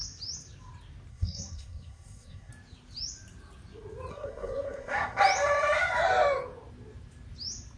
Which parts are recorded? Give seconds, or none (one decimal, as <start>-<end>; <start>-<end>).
0.0-1.1; 2.5-4.1; 5.2-7.8